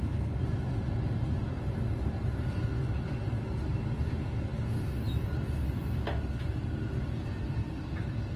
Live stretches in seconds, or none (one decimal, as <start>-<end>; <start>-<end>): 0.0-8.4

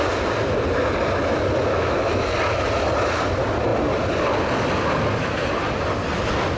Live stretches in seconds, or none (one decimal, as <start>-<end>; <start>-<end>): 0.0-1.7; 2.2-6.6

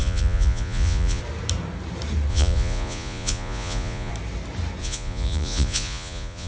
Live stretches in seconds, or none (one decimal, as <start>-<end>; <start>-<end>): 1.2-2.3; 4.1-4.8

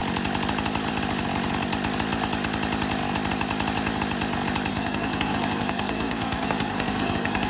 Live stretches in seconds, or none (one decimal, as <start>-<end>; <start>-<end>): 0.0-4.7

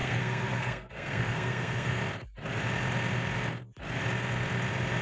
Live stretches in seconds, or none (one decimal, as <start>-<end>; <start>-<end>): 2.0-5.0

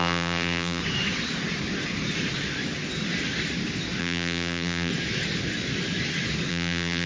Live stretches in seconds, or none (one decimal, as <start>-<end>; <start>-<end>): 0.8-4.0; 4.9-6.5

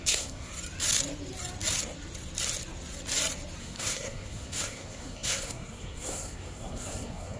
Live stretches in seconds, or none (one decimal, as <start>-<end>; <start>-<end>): 0.5-3.6

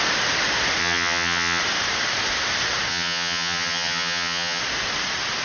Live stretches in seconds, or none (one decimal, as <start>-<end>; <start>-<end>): 0.0-0.8; 1.6-2.9; 4.6-5.4